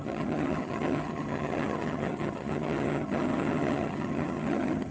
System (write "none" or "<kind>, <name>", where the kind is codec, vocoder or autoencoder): vocoder, HiFi-GAN